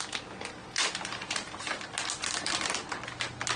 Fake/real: real